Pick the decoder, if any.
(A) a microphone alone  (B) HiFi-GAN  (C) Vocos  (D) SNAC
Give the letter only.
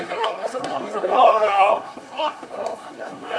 D